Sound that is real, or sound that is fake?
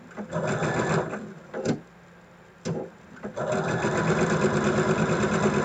real